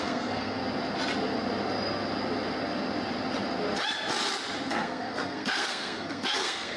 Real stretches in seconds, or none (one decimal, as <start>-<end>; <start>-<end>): 0.6-4.7